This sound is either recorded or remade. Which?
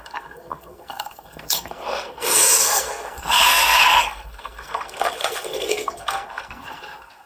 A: remade